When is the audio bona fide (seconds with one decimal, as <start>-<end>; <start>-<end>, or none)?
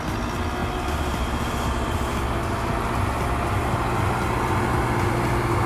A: 0.0-5.7